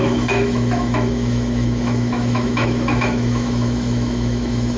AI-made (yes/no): yes